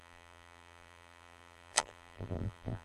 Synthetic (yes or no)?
yes